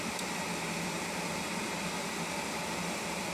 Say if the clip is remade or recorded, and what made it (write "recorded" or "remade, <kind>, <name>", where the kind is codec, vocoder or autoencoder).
recorded